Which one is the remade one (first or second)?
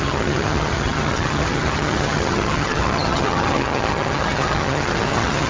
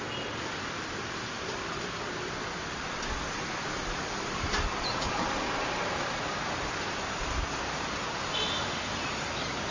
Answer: first